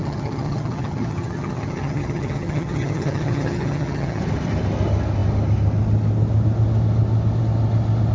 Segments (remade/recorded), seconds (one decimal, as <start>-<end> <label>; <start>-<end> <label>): 0.0-4.2 remade; 4.2-8.1 recorded